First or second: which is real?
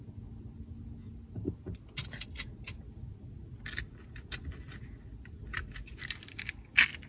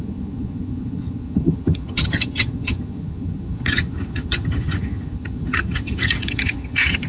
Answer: first